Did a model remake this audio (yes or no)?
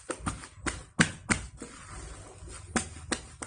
no